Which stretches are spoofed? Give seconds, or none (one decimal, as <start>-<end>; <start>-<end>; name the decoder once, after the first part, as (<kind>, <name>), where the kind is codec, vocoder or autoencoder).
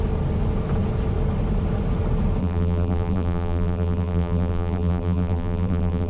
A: 2.4-6.1 (vocoder, BigVGAN v2)